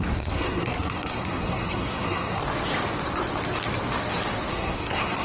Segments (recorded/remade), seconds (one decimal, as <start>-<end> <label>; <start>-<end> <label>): 0.0-2.4 remade; 2.4-4.5 recorded; 4.5-5.2 remade